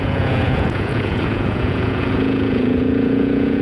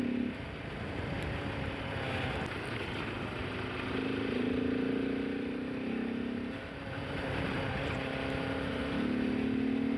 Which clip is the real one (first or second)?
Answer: second